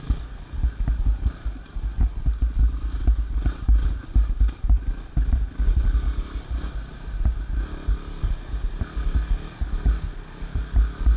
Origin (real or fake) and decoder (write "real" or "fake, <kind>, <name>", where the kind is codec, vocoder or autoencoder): real